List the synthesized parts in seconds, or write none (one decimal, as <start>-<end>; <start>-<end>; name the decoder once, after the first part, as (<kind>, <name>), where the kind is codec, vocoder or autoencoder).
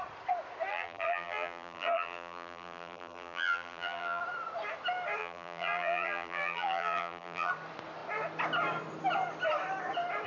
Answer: 0.7-4.2 (vocoder, BigVGAN v2); 5.2-7.5